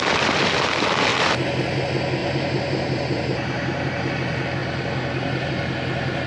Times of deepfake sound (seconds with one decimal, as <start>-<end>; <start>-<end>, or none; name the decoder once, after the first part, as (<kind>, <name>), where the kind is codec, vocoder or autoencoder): 2.2-4.1 (vocoder, BigVGAN v2)